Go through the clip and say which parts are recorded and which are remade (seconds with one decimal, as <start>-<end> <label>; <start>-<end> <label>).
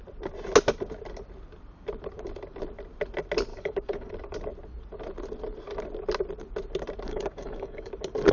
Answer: 0.0-3.5 recorded; 3.5-4.1 remade; 4.1-7.1 recorded; 7.1-7.9 remade; 7.9-8.3 recorded